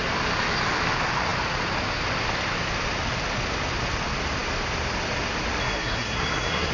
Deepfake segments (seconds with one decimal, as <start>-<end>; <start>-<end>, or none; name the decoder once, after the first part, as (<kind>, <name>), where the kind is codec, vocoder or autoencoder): 5.6-6.7 (codec, SNAC)